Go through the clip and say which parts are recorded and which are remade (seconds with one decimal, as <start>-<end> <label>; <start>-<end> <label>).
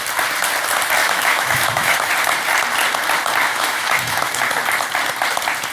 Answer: 0.0-1.0 recorded; 1.0-2.1 remade; 2.1-3.5 recorded; 3.5-4.3 remade; 4.3-5.7 recorded